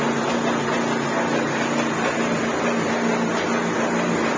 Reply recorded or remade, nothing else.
recorded